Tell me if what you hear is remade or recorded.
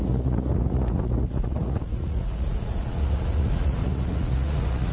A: remade